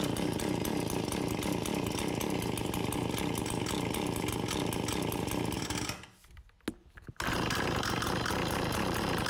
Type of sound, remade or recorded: recorded